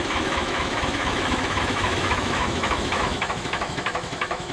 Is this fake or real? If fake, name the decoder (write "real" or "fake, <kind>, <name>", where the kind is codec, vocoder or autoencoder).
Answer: fake, autoencoder, DAC-VAE